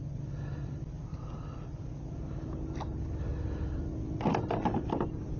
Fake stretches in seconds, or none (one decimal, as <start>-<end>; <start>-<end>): 1.1-1.8; 3.3-3.9